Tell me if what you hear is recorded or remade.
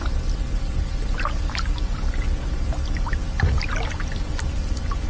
recorded